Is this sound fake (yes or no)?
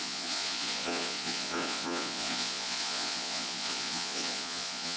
yes